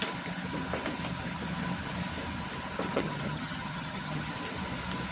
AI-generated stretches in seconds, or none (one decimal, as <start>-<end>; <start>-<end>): 2.9-4.3